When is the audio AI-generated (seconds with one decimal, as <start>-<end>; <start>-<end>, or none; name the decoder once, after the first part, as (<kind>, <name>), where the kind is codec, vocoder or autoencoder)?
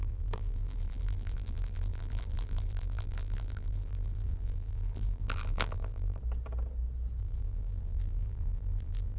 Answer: 0.0-6.2 (vocoder, BigVGAN v2); 7.2-9.2